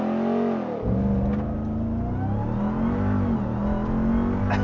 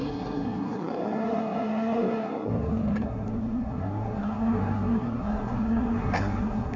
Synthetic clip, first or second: second